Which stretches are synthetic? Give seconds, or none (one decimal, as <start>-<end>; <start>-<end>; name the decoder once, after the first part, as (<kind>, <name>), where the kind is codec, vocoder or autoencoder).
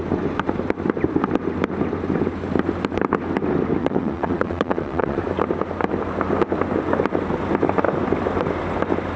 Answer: 3.8-5.2 (vocoder, Vocos)